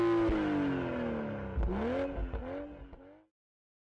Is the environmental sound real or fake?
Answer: real